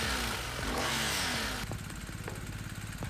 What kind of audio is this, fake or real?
real